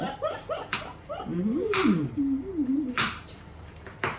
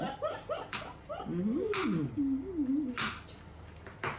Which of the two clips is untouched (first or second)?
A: second